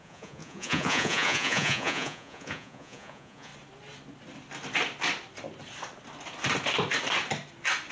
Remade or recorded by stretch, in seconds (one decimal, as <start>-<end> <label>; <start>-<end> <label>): 0.0-3.5 remade; 3.5-7.9 recorded